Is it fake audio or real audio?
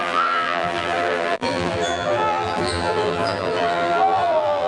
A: fake